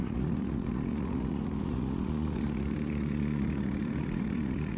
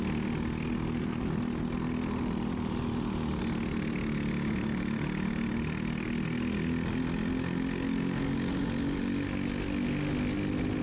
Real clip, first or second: second